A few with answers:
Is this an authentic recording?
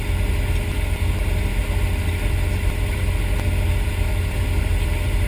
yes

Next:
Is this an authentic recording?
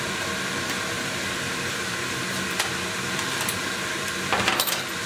no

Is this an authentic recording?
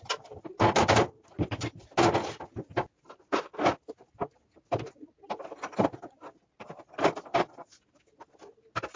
yes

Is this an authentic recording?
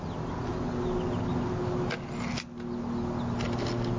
yes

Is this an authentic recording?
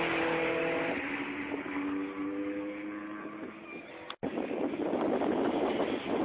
yes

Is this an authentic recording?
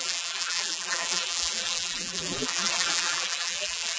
no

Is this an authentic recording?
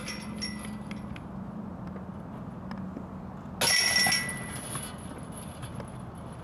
yes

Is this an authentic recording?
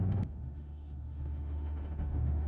no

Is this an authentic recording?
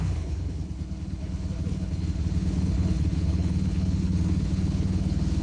no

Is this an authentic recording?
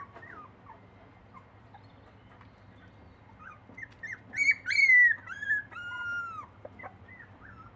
yes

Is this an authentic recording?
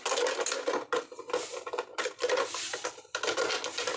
yes